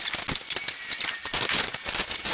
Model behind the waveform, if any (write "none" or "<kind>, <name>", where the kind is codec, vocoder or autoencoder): none